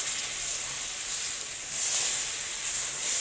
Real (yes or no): yes